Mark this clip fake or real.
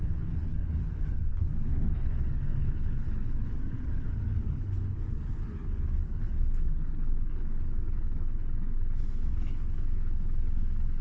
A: fake